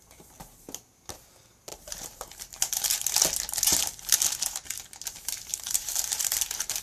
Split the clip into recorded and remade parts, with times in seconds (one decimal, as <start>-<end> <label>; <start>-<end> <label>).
0.0-1.7 recorded; 1.7-3.0 remade; 3.0-5.5 recorded; 5.5-6.8 remade